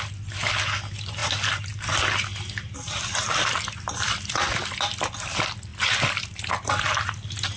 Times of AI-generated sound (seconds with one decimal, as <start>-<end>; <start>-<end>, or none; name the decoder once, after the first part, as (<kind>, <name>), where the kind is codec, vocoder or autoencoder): none